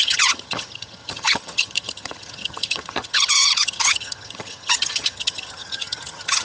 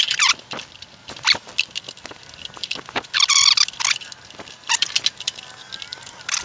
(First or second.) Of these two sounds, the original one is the second